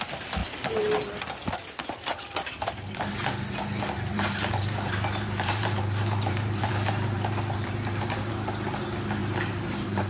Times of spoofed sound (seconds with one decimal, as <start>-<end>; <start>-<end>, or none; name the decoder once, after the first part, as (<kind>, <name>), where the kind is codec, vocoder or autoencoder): 4.1-8.3 (vocoder, BigVGAN v2); 9.2-10.1